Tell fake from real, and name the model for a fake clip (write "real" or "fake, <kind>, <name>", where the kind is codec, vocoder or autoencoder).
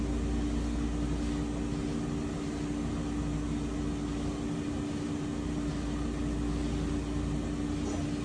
real